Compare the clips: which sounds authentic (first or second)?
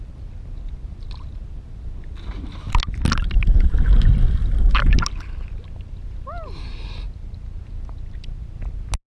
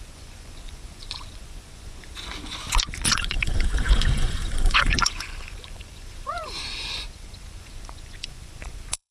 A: first